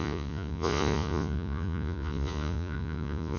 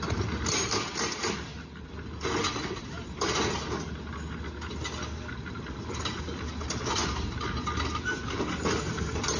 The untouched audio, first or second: second